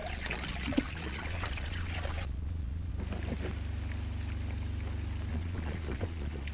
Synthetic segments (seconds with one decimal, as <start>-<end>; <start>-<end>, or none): 0.0-2.9; 5.3-6.5